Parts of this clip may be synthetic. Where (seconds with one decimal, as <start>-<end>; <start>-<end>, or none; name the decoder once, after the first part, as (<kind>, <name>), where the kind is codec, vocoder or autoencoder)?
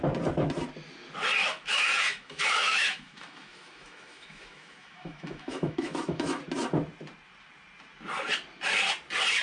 1.4-6.4 (autoencoder, DAC-VAE)